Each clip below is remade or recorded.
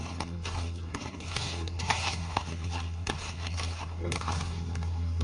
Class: remade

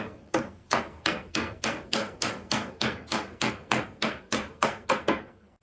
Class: remade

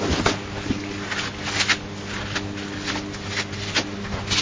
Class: recorded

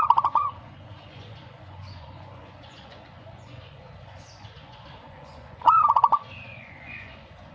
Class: remade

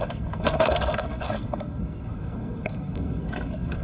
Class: remade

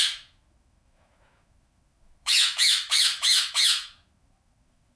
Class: remade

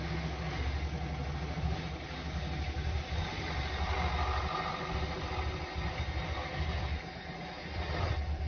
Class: recorded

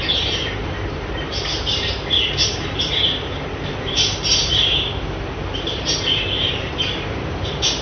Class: remade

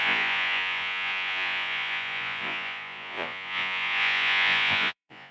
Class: remade